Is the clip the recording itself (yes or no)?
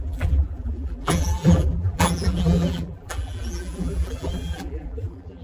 no